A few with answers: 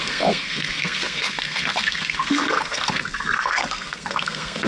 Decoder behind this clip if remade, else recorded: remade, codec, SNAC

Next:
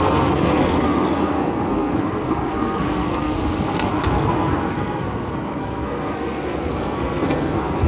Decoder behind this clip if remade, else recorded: remade, codec, SNAC